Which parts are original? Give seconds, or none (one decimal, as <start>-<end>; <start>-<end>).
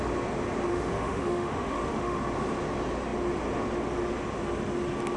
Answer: 0.0-0.7; 2.2-5.2